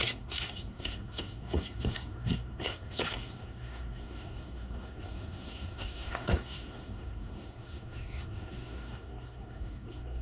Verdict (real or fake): fake